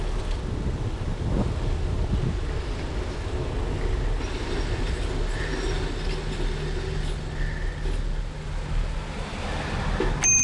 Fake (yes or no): no